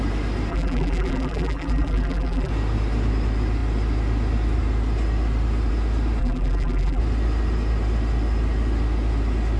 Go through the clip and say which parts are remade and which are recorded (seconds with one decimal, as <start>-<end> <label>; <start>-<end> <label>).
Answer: 0.0-0.5 recorded; 0.5-2.5 remade; 2.5-6.2 recorded; 6.2-7.0 remade; 7.0-9.6 recorded